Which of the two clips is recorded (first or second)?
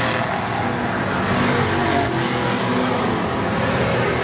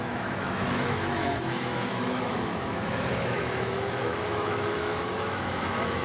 first